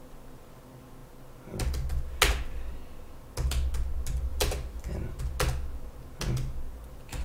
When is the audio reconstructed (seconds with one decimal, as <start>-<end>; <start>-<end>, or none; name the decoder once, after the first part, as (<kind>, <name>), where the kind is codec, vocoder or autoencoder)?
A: 4.3-5.2 (vocoder, BigVGAN v2)